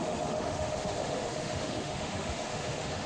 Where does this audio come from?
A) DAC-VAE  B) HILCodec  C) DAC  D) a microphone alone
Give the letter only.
A